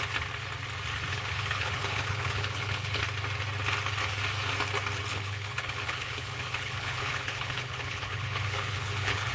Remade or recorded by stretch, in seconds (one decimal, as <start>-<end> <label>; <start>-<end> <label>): 0.0-1.1 recorded; 1.1-3.0 remade; 3.0-5.1 recorded; 5.1-9.3 remade